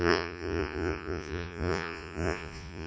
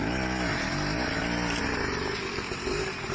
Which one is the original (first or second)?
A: second